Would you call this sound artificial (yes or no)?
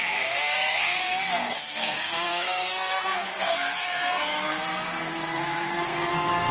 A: yes